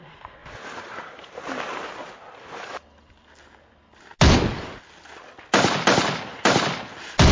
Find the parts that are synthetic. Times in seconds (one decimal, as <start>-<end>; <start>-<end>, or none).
0.4-2.7